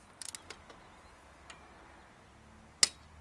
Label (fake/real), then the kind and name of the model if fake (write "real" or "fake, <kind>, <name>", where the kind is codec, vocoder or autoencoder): real